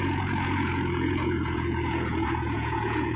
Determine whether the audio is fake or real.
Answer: fake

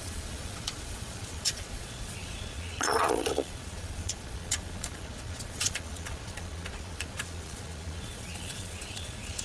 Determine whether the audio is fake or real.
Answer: fake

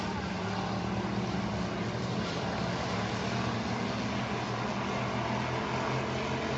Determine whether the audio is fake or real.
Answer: real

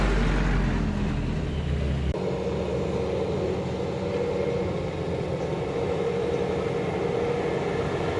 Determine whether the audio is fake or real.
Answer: real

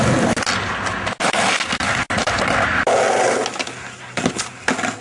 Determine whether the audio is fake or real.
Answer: real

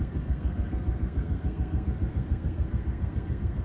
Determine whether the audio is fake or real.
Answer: fake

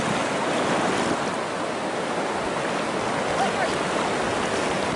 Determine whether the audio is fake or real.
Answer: real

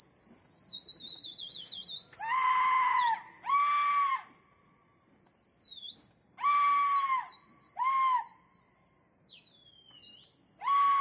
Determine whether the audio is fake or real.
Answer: real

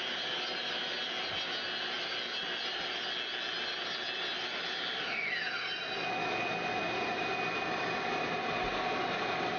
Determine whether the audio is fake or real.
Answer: real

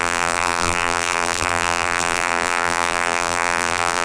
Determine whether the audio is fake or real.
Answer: fake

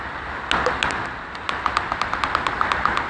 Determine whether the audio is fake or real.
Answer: real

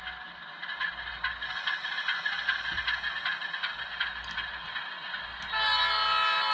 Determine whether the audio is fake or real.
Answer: real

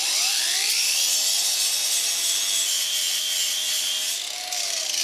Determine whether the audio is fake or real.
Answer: real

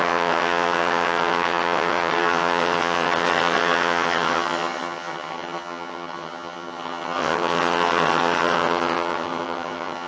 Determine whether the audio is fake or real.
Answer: fake